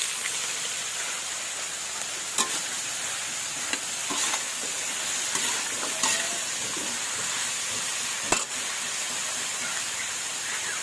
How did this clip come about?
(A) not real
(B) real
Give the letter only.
B